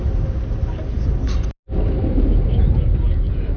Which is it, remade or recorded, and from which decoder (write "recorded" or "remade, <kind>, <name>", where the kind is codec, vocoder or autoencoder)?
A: recorded